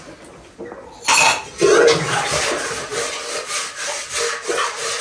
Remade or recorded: recorded